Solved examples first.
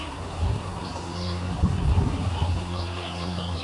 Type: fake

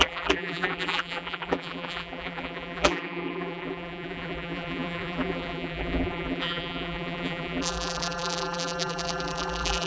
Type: fake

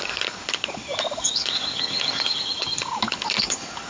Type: fake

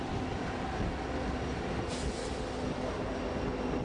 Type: real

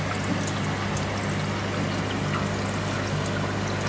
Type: real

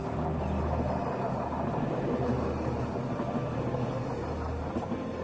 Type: real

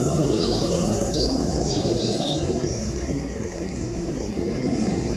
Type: fake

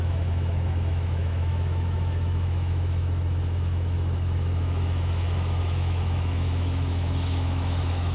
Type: fake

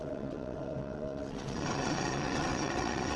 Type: fake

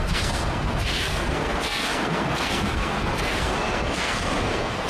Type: fake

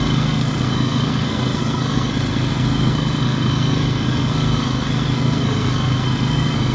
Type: fake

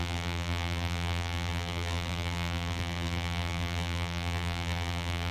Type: fake